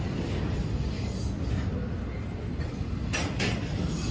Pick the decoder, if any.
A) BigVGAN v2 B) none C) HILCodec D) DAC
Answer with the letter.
B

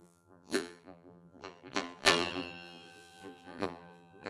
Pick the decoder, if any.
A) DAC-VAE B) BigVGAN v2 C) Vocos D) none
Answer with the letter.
B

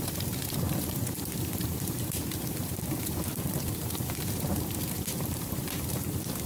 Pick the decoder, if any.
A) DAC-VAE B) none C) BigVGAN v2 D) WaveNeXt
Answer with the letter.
C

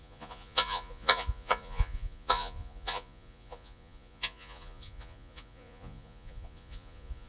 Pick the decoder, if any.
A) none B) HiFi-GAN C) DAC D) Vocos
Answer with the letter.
D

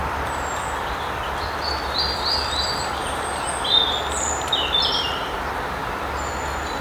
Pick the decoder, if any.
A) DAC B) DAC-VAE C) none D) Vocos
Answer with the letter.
C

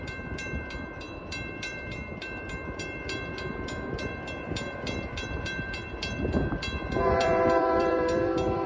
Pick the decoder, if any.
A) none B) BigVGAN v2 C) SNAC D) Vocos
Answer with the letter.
B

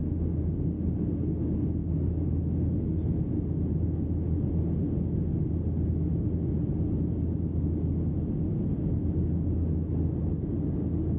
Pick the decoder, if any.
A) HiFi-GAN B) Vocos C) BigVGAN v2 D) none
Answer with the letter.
D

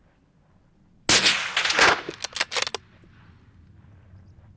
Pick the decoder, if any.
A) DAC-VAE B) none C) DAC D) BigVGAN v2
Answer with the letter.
B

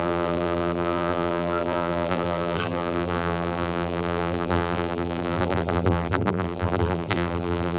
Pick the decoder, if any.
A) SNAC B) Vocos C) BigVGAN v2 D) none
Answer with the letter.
C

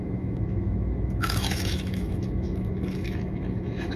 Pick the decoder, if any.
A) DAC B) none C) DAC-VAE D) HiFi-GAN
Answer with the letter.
C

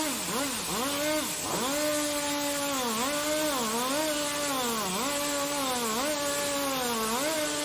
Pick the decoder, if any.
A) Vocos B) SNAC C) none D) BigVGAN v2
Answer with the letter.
C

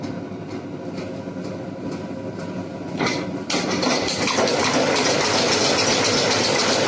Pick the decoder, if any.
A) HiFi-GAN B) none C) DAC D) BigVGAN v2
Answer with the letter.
B